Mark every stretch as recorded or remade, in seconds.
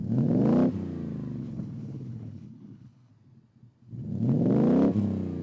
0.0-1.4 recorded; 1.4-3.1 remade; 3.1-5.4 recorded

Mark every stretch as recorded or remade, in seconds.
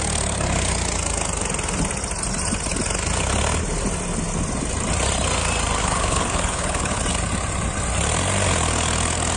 0.0-5.8 recorded; 5.8-7.0 remade; 7.0-9.4 recorded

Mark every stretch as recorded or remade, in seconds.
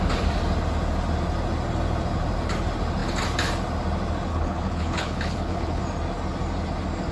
0.0-4.3 recorded; 4.3-5.8 remade; 5.8-7.1 recorded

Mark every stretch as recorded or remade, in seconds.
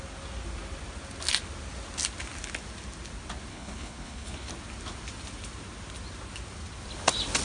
0.0-3.5 recorded; 3.5-4.5 remade; 4.5-7.4 recorded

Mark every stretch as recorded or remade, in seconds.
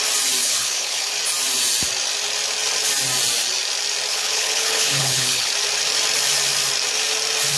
0.0-0.4 recorded; 0.4-1.1 remade; 1.1-4.1 recorded; 4.1-5.5 remade; 5.5-7.6 recorded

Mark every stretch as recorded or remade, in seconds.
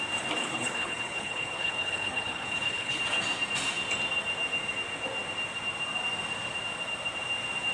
0.0-0.4 recorded; 0.4-3.0 remade; 3.0-7.7 recorded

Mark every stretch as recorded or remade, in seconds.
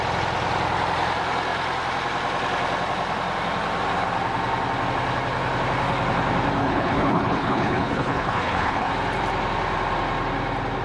0.0-6.6 recorded; 6.6-8.9 remade; 8.9-10.8 recorded